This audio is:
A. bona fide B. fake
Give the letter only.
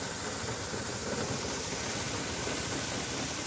B